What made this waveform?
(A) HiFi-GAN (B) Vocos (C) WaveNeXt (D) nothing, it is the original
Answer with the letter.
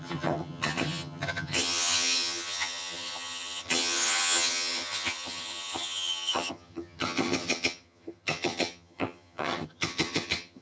A